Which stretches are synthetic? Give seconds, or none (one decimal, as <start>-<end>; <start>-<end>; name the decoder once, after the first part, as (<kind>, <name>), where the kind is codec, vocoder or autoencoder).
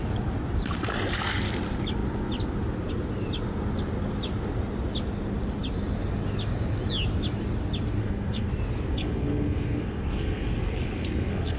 8.0-8.5 (codec, SNAC); 8.9-11.6